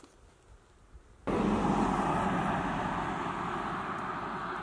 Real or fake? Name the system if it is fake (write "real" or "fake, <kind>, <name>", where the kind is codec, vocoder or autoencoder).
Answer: real